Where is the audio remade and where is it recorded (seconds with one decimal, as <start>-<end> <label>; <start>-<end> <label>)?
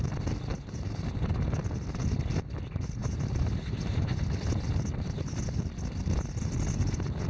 0.0-0.5 recorded; 0.5-1.7 remade; 1.7-3.0 recorded; 3.0-4.2 remade; 4.2-7.3 recorded